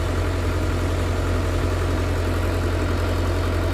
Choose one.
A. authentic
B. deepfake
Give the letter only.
A